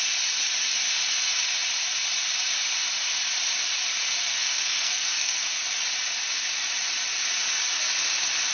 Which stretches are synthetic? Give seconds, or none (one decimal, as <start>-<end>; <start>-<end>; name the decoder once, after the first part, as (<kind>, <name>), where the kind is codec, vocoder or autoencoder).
4.2-5.4 (codec, SNAC)